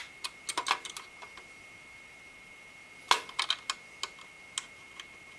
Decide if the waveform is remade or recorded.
recorded